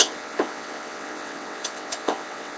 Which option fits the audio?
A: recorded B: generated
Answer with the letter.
B